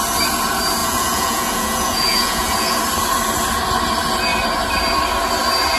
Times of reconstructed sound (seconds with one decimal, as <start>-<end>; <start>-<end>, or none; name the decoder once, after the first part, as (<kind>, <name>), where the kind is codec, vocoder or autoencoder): 0.8-2.8 (vocoder, Vocos)